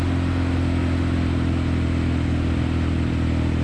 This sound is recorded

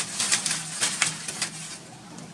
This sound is recorded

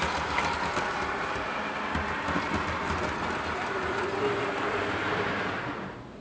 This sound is recorded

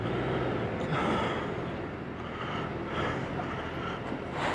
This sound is recorded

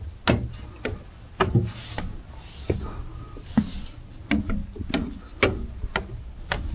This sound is recorded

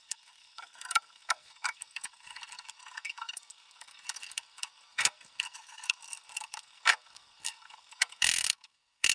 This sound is remade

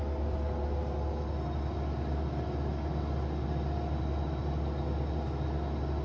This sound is recorded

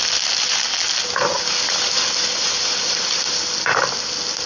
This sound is recorded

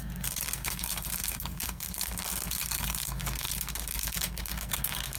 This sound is remade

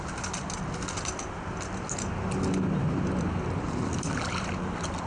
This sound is recorded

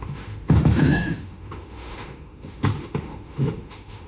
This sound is remade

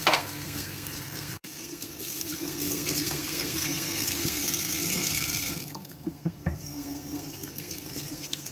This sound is remade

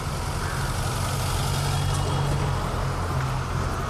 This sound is recorded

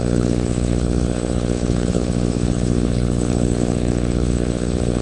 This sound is remade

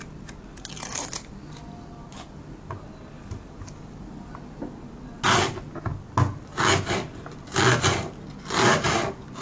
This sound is recorded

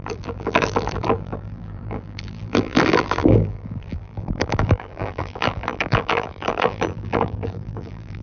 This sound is remade